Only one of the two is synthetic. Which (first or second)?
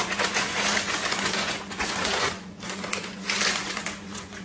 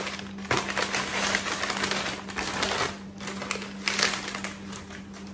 first